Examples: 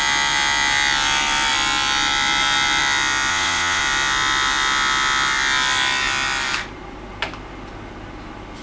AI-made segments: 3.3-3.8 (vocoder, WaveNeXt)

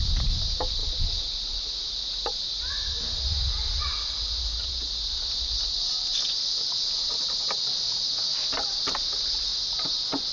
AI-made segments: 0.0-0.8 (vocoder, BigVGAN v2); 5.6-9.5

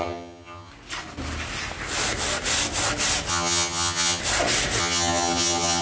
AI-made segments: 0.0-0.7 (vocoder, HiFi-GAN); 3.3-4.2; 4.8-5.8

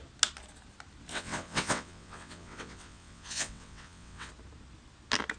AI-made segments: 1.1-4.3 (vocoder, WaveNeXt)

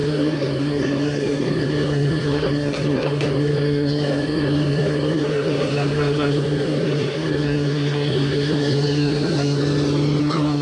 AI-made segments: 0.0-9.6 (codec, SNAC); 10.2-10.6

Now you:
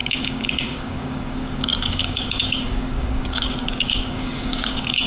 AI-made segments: 0.0-5.1 (codec, DAC)